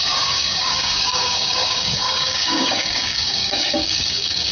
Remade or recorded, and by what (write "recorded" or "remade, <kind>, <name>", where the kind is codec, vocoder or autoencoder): remade, codec, DAC